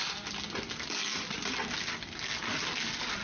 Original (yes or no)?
yes